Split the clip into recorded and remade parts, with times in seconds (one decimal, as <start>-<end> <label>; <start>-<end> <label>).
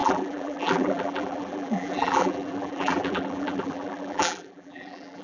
0.0-5.2 remade